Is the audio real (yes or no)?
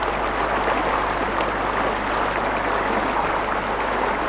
yes